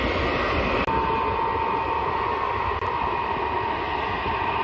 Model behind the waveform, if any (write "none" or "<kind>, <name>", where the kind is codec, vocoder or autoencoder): none